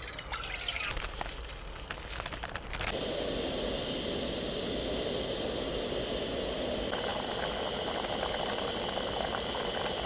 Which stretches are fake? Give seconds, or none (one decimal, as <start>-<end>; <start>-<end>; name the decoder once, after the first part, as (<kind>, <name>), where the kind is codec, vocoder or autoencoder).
none